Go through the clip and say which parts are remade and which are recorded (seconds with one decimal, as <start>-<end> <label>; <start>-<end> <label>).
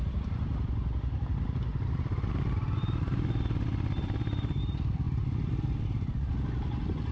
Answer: 0.0-7.1 recorded